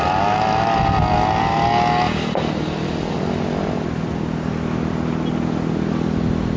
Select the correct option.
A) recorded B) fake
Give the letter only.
A